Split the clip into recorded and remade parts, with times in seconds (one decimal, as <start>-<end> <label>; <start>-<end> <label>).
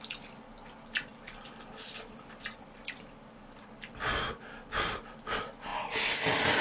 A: 0.0-6.6 recorded